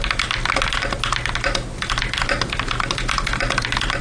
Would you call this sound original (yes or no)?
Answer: yes